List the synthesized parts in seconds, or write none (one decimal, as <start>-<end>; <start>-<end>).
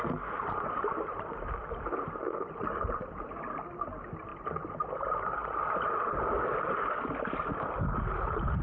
none